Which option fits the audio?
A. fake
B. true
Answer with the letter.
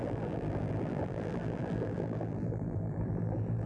A